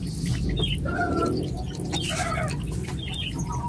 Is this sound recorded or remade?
recorded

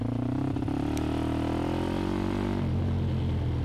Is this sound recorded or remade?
recorded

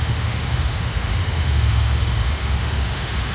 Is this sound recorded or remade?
remade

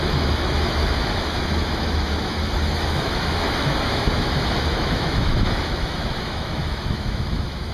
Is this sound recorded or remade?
remade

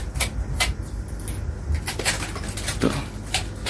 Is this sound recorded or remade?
recorded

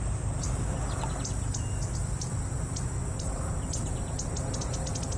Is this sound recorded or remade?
recorded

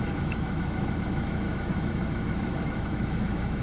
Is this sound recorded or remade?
remade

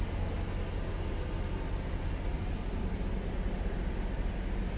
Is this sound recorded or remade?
recorded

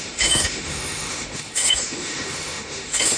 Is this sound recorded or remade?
remade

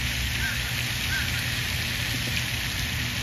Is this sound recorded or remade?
recorded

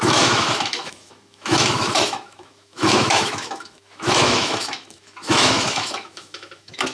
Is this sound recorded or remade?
remade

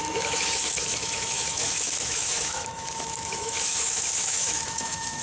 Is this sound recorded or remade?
remade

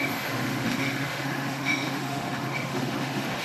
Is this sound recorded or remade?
remade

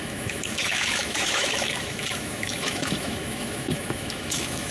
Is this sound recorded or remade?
remade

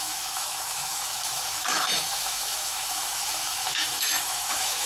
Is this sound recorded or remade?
remade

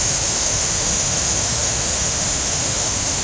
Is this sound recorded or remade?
remade